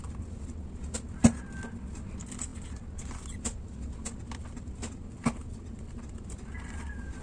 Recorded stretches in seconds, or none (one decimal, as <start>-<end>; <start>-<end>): 0.0-7.2